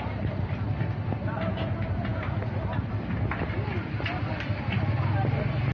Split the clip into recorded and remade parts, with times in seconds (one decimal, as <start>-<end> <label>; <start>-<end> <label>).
0.0-5.7 recorded